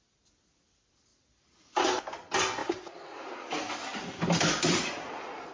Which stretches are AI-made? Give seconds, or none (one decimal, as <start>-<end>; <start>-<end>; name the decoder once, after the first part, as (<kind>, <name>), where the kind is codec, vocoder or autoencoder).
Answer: none